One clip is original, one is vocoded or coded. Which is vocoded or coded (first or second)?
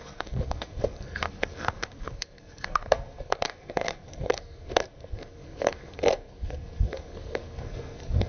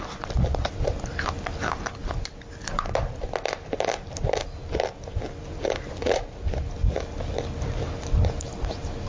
first